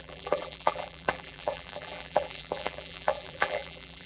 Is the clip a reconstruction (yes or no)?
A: yes